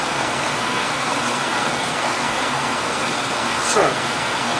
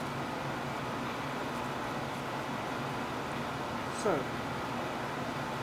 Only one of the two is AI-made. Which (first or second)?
first